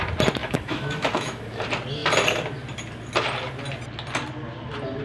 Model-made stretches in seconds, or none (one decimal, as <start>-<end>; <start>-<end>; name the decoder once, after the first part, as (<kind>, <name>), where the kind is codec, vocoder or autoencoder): 0.4-1.6 (autoencoder, DAC-VAE)